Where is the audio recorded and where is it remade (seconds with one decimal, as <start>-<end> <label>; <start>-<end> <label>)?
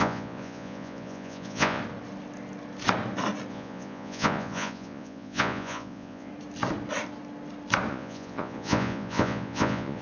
0.0-1.8 remade; 1.8-3.5 recorded; 3.5-6.3 remade; 6.3-7.9 recorded; 7.9-10.0 remade